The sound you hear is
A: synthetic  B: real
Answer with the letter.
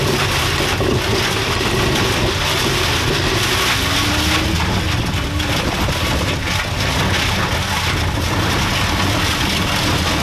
B